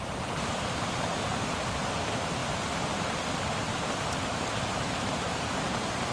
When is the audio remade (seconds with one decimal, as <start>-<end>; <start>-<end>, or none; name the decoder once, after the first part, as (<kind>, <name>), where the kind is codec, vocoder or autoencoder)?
0.0-2.4 (vocoder, BigVGAN v2); 4.4-6.1